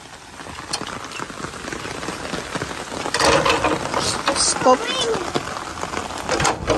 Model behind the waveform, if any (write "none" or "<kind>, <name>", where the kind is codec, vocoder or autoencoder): none